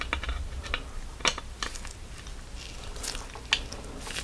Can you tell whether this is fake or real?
real